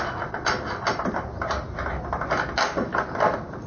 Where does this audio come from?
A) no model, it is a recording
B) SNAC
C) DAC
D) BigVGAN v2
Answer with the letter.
A